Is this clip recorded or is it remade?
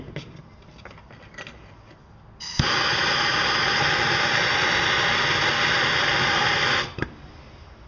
recorded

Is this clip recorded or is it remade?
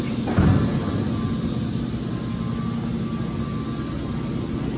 recorded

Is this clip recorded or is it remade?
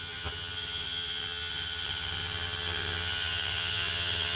remade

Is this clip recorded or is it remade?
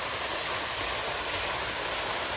recorded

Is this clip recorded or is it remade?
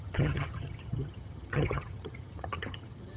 remade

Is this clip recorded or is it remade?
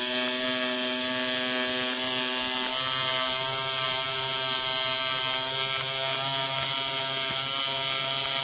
recorded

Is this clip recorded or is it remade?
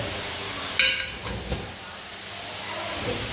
recorded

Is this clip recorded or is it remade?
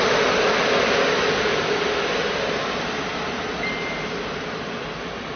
recorded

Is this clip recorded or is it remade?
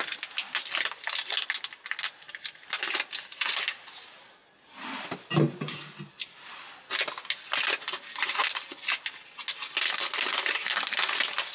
recorded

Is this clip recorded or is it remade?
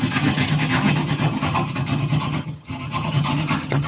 remade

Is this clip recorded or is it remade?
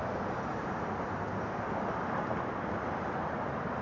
recorded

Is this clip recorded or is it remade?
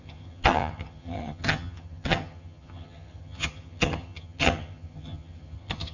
remade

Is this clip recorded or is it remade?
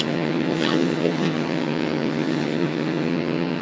remade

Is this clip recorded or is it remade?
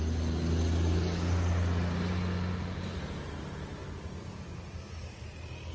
recorded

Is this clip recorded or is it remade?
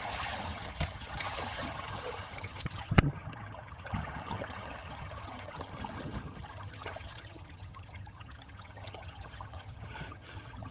remade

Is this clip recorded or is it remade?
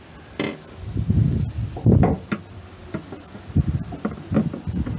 recorded